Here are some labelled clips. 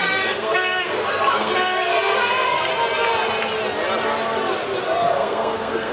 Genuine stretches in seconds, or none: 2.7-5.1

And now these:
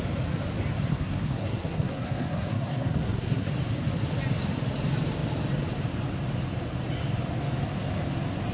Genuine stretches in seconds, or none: 0.0-0.9; 3.5-8.5

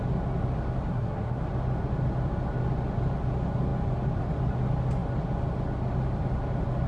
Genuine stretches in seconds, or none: 0.0-0.9; 1.4-6.9

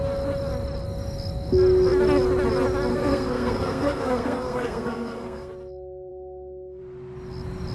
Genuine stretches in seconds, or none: 0.0-2.9; 5.5-6.1; 6.8-7.7